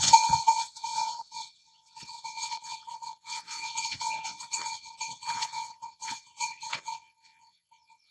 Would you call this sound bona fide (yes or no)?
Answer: no